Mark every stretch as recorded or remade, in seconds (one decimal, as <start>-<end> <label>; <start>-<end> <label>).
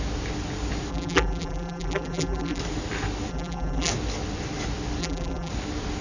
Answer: 0.0-0.9 recorded; 0.9-2.6 remade; 2.6-3.3 recorded; 3.3-3.9 remade; 3.9-5.0 recorded; 5.0-5.5 remade; 5.5-6.0 recorded